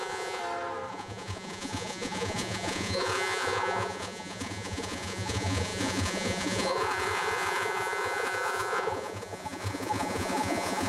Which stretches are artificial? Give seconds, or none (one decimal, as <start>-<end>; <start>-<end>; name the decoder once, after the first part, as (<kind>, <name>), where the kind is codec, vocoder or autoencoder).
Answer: 0.0-0.4 (vocoder, Vocos); 0.9-10.9

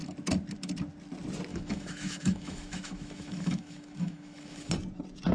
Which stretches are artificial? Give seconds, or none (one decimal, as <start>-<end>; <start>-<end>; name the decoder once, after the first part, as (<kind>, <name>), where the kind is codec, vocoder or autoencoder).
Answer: 1.5-4.7 (autoencoder, DAC-VAE)

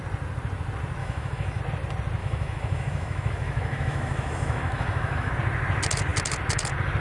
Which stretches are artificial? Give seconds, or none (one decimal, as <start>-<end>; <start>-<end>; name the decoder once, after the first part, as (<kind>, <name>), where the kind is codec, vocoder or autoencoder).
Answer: 1.0-1.6 (autoencoder, DAC-VAE); 2.2-5.3